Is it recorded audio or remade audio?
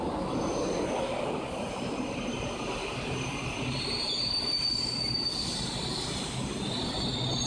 recorded